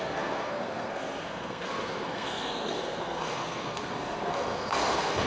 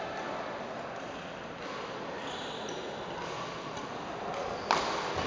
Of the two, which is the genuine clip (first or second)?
second